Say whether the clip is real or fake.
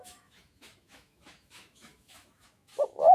fake